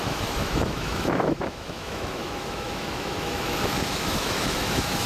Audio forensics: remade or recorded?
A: remade